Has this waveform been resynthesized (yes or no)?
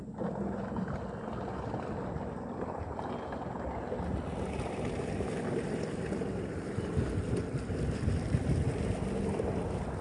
no